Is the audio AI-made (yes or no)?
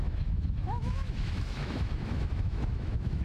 yes